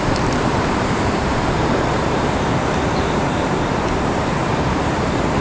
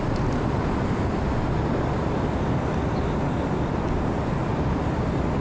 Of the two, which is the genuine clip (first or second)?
second